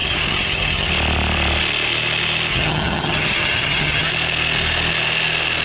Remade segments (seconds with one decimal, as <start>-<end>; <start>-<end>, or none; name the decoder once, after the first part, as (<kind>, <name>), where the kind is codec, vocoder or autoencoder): 0.0-0.9 (vocoder, HiFi-GAN); 2.5-4.1